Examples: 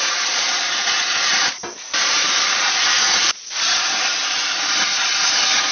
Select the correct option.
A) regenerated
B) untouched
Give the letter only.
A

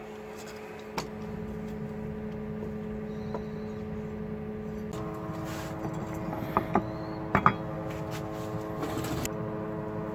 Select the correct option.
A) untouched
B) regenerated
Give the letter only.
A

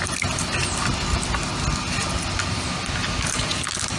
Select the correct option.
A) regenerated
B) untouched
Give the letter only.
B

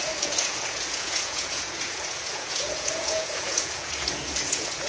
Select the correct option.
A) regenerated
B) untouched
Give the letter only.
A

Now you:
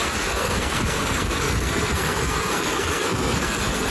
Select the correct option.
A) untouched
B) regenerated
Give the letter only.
B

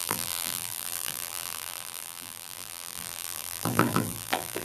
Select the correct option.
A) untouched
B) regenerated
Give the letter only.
B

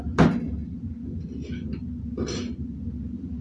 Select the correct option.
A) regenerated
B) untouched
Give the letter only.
B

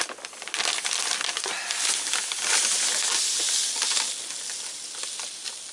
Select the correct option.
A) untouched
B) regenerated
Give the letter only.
A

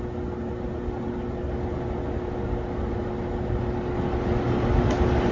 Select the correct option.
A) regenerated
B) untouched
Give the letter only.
B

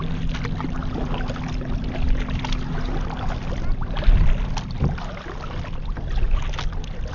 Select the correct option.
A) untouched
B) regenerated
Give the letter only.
A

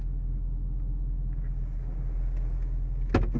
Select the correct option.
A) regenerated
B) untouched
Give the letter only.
B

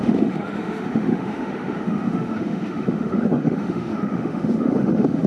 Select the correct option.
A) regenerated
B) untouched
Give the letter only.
A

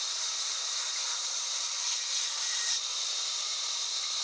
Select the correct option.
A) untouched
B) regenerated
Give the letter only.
A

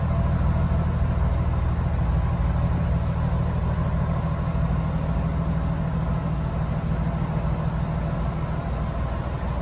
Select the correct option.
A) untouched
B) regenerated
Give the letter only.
A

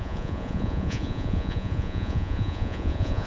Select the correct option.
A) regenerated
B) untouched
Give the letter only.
A